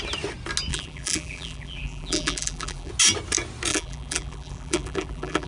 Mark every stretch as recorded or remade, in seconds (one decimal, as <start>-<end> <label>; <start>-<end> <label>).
0.0-0.7 recorded; 0.7-2.9 remade; 2.9-3.7 recorded; 3.7-5.5 remade

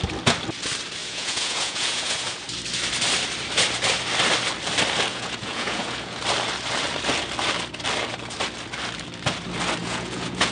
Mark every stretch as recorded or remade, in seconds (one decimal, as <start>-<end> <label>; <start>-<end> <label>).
0.0-1.0 recorded; 1.0-2.4 remade; 2.4-5.1 recorded; 5.1-6.2 remade; 6.2-9.8 recorded; 9.8-10.5 remade

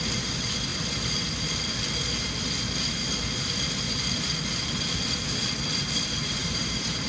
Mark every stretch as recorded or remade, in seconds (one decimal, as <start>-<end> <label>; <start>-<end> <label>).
0.0-6.4 recorded; 6.4-7.1 remade